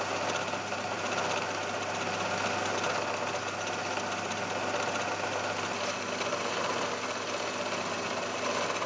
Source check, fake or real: real